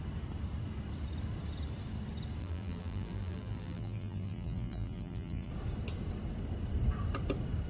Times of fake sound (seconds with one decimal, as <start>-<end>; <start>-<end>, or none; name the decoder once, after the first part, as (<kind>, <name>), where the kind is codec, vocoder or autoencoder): 2.4-5.5 (vocoder, BigVGAN v2)